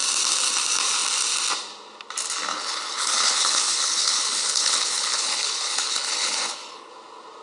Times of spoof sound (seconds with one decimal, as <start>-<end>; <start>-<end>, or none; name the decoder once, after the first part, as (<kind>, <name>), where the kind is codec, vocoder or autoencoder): 2.5-6.9 (codec, HILCodec)